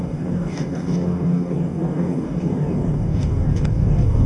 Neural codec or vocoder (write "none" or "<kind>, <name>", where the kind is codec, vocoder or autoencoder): codec, DAC